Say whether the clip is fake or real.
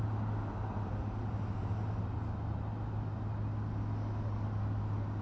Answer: real